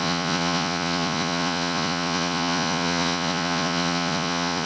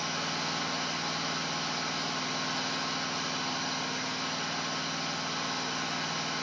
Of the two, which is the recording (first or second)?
second